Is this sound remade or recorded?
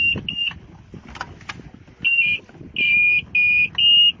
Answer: recorded